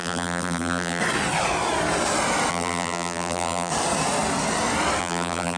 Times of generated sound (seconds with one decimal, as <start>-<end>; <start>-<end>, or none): 0.0-1.0; 2.5-3.7; 5.0-5.6